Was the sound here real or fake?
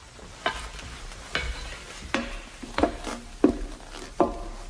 real